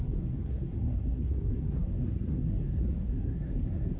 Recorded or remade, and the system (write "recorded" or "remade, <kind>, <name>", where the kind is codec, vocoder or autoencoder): remade, codec, SNAC